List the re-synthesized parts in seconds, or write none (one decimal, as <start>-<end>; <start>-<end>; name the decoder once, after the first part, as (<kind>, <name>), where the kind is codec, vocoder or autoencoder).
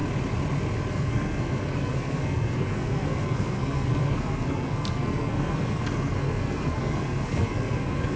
0.9-8.2 (codec, SNAC)